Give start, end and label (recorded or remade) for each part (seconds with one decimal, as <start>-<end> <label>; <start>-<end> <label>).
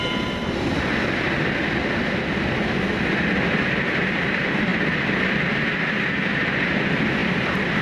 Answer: 0.0-0.9 remade; 0.9-3.7 recorded; 3.7-7.8 remade